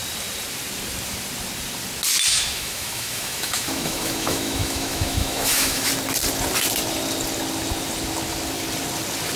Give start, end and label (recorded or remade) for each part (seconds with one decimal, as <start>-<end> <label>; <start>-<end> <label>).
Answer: 0.0-2.3 recorded; 2.3-5.9 remade; 5.9-9.4 recorded